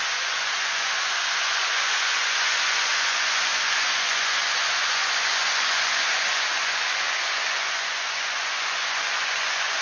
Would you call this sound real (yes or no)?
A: no